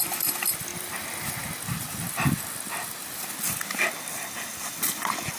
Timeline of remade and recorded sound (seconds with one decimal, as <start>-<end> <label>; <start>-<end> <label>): 0.0-5.4 recorded